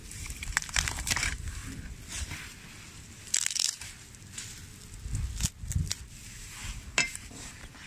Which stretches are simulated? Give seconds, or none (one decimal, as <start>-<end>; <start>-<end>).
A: 0.0-1.6; 6.3-7.9